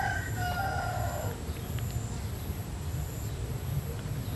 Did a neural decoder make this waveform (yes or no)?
no